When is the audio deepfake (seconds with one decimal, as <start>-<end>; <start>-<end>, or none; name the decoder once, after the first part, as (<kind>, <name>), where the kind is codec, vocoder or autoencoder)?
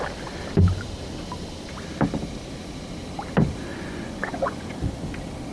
3.7-4.9 (vocoder, Vocos)